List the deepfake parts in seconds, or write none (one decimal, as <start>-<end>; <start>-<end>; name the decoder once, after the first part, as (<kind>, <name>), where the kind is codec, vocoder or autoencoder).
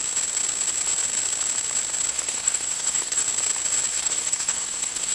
2.1-3.2 (codec, SNAC); 3.9-5.1